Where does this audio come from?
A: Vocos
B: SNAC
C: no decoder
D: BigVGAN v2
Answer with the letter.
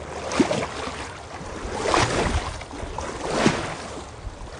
C